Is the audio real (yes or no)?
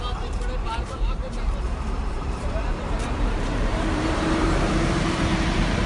no